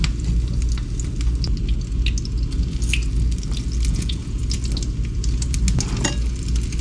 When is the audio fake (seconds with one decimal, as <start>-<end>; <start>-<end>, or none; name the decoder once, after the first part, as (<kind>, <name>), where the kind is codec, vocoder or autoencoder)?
3.9-4.4 (vocoder, Vocos)